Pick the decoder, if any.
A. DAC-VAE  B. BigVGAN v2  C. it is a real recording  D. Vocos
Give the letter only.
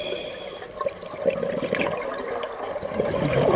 C